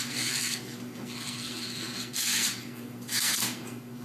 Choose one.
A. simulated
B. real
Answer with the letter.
A